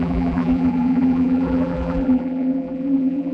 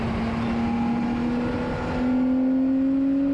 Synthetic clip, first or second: first